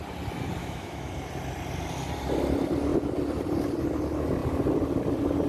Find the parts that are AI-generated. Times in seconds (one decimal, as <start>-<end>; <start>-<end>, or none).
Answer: 0.6-1.1